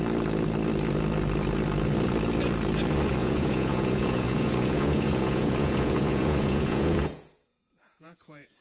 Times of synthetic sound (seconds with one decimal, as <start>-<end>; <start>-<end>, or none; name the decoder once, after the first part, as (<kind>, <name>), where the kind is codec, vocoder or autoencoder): 3.2-8.6 (vocoder, Vocos)